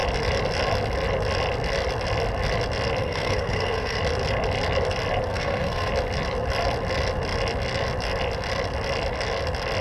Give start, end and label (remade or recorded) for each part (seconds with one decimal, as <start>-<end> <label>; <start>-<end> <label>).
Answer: 0.0-3.0 recorded; 3.0-4.0 remade; 4.0-5.3 recorded; 5.3-5.9 remade; 5.9-9.8 recorded